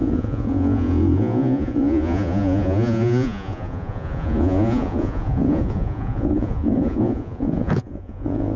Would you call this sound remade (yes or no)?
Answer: yes